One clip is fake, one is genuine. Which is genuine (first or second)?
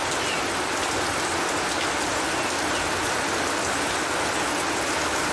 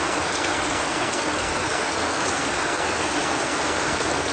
first